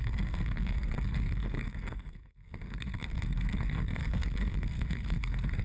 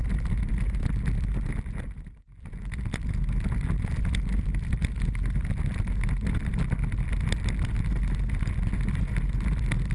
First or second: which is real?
second